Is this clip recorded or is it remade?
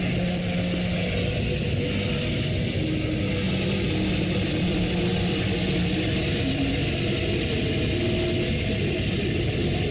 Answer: recorded